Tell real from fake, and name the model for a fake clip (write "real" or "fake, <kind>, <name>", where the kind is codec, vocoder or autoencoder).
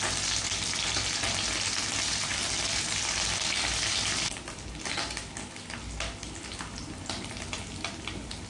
real